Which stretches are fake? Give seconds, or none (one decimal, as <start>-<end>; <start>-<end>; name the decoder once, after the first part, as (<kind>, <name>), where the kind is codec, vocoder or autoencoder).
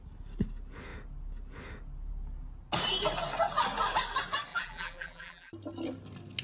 4.5-5.5 (vocoder, BigVGAN v2)